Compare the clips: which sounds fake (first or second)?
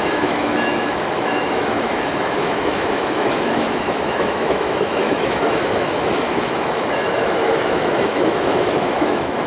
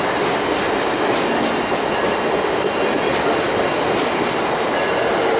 first